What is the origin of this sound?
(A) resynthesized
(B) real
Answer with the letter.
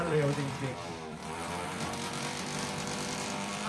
A